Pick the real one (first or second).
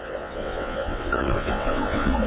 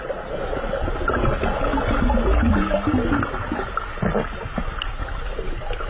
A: second